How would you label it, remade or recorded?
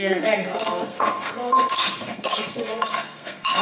remade